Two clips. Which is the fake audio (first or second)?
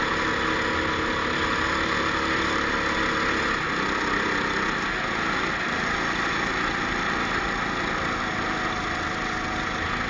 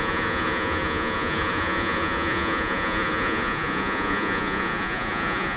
second